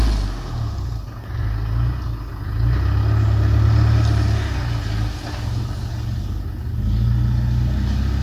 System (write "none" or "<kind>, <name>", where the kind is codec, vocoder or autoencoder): none